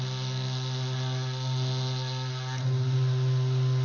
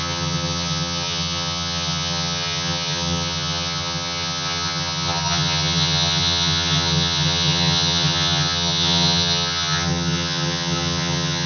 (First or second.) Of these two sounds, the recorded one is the first